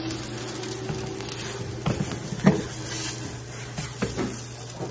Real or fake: real